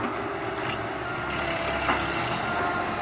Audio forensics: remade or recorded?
recorded